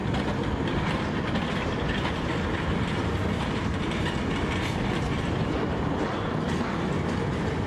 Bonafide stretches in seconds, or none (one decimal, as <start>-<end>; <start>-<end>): 3.9-7.7

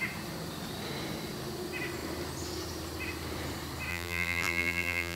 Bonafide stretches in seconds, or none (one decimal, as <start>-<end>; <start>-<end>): 0.0-3.9

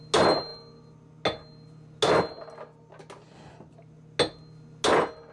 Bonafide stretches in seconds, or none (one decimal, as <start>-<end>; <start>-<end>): 0.0-5.3

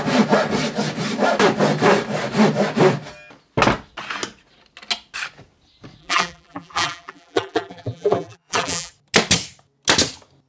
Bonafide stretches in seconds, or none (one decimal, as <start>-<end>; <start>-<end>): 0.0-6.0; 8.9-10.5

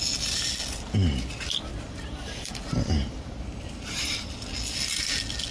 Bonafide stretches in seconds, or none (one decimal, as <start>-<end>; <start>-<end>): 0.0-1.7; 4.3-5.5

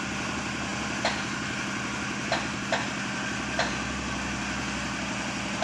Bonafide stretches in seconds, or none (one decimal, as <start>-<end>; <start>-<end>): 0.0-5.6